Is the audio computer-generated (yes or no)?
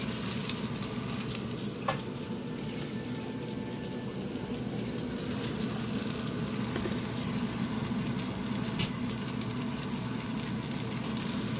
no